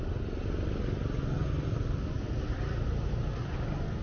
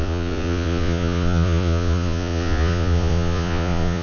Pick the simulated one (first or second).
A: second